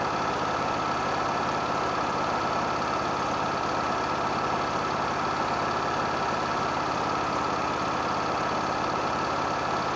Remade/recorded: recorded